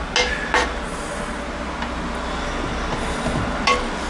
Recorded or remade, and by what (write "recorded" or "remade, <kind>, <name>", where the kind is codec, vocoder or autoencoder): recorded